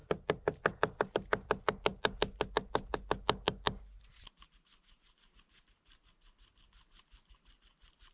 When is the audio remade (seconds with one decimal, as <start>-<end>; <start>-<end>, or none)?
none